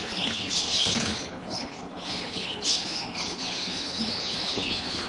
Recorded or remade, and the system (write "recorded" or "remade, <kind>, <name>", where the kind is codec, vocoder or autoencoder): remade, codec, HILCodec